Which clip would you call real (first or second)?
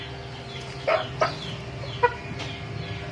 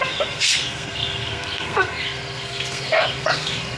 first